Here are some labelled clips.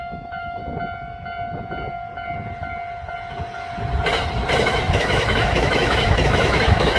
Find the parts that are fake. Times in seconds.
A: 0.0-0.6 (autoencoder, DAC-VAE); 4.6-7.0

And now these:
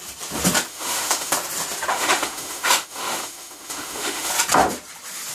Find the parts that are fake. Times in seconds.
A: 0.7-1.3 (autoencoder, DAC-VAE); 1.9-4.3

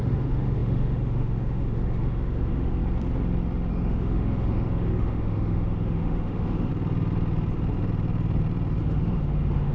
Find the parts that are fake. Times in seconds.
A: 0.0-2.8 (autoencoder, DAC-VAE); 3.7-6.7; 8.8-9.7

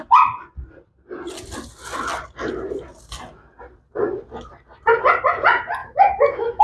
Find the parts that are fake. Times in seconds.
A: 5.8-6.6 (autoencoder, DAC-VAE)

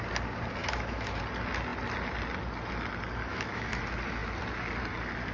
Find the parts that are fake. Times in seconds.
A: 0.6-1.2 (autoencoder, DAC-VAE); 3.3-3.8